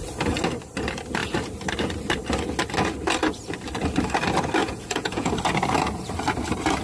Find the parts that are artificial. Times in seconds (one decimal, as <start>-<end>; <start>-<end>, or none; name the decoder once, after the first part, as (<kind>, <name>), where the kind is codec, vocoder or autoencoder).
4.6-5.3 (vocoder, Vocos)